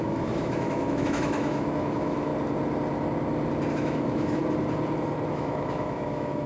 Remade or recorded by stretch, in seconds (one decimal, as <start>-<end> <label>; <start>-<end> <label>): 0.0-2.3 remade; 2.3-3.7 recorded; 3.7-4.4 remade; 4.4-5.3 recorded; 5.3-6.5 remade